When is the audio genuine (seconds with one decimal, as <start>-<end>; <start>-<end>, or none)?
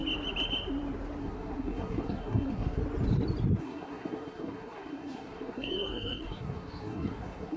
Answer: 0.0-1.2; 2.8-3.6